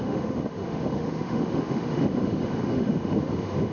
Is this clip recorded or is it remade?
remade